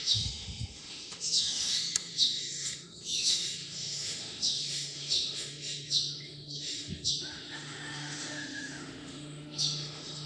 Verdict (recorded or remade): remade